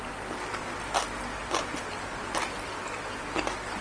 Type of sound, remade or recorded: recorded